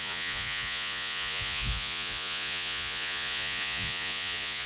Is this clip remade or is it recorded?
remade